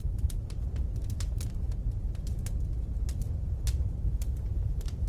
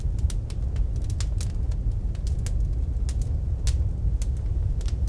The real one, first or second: second